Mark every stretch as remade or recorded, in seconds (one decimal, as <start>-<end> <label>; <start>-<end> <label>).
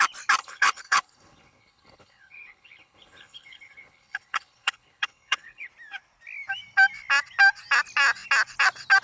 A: 0.0-0.4 recorded; 0.4-5.7 remade; 5.7-9.0 recorded